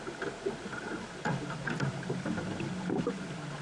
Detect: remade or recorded recorded